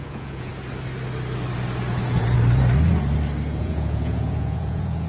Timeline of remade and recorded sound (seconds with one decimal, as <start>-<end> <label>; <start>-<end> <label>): 0.0-0.5 remade; 0.5-3.6 recorded; 3.6-5.1 remade